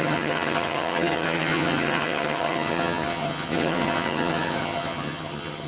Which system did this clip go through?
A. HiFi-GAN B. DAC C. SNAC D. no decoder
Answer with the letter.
A